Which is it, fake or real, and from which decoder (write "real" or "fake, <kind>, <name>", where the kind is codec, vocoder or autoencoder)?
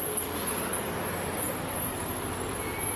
real